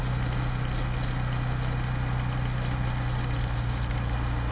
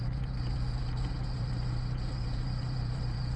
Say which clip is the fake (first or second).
second